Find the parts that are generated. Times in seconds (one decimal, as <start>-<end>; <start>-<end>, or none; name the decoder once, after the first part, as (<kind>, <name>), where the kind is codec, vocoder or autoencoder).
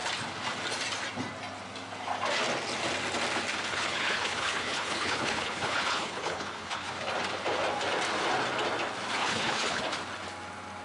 3.7-6.9 (codec, HILCodec); 9.2-9.8